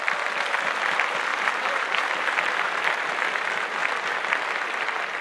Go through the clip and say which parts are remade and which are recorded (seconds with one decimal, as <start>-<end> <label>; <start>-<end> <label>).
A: 0.0-1.3 recorded; 1.3-2.1 remade; 2.1-5.2 recorded